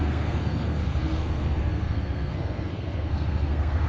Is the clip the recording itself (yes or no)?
no